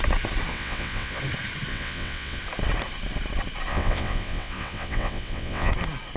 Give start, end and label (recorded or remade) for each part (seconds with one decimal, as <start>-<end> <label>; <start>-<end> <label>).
0.0-0.5 recorded; 0.5-1.2 remade; 1.2-1.7 recorded; 1.7-2.4 remade; 2.4-3.7 recorded; 3.7-5.7 remade; 5.7-6.2 recorded